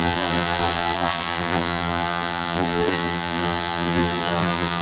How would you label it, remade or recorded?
remade